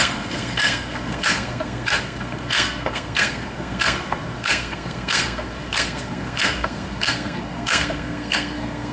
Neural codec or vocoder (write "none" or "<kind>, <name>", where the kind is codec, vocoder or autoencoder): codec, SNAC